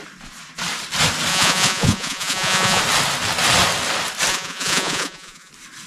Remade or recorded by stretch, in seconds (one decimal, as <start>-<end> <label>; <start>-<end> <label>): 0.0-1.3 recorded; 1.3-2.8 remade; 2.8-4.3 recorded; 4.3-5.5 remade; 5.5-5.9 recorded